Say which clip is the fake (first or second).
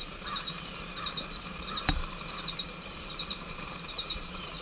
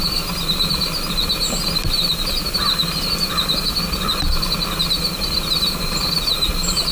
first